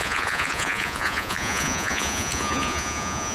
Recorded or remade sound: remade